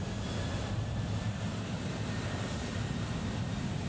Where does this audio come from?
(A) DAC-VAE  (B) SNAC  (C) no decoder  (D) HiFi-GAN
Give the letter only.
C